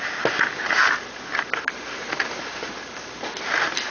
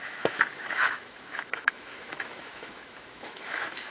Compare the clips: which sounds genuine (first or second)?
first